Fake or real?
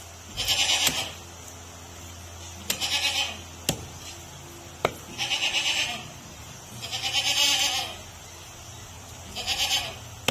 real